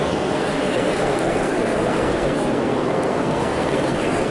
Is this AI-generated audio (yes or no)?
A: yes